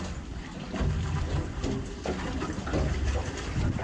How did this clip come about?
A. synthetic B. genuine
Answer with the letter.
B